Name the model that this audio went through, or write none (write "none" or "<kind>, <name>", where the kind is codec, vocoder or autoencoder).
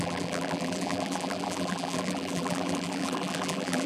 vocoder, BigVGAN v2